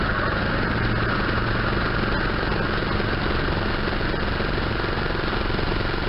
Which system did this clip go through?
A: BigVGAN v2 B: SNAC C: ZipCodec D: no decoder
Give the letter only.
D